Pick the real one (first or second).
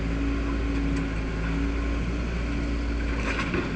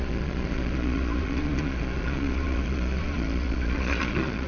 first